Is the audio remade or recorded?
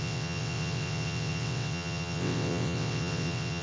remade